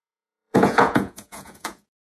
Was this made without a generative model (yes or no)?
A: no